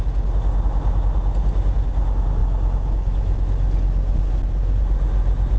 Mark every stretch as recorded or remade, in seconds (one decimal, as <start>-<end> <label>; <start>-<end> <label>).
0.0-5.6 recorded